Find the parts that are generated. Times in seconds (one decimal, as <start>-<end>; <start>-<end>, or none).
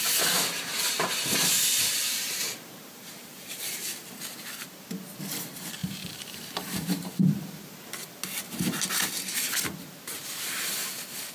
2.0-3.9; 5.8-7.9